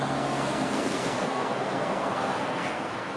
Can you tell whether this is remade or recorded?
remade